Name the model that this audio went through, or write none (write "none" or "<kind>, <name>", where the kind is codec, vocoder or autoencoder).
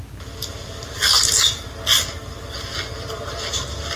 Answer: none